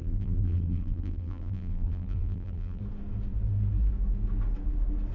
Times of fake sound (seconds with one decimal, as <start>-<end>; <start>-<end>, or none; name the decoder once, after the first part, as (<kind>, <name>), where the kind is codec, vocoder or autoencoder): 0.0-2.8 (vocoder, BigVGAN v2)